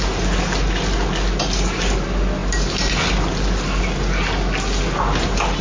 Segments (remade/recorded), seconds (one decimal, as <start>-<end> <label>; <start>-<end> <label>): 0.0-5.6 recorded